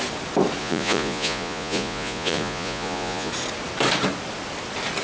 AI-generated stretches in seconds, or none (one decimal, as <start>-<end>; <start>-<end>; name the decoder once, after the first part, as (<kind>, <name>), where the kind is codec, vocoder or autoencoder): 0.6-3.3 (vocoder, Vocos)